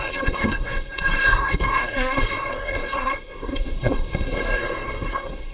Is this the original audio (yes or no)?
no